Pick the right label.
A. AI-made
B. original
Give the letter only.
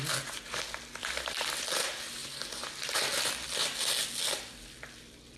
B